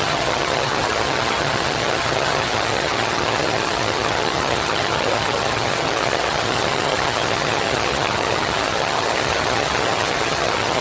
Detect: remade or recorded remade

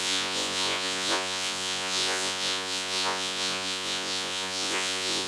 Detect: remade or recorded remade